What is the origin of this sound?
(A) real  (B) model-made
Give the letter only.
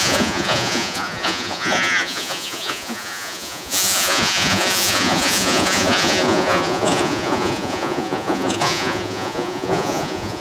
B